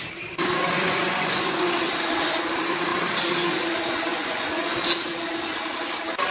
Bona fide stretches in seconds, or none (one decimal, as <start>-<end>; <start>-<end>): 0.0-0.7; 1.7-4.1; 4.7-6.3